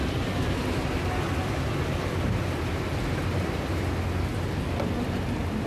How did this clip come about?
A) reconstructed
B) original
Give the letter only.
B